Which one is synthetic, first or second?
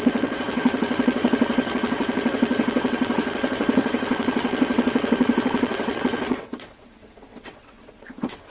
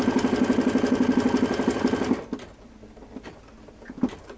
first